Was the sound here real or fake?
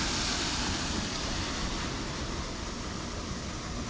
real